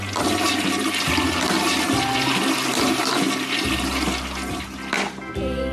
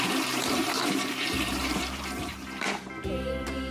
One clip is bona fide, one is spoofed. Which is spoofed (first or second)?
second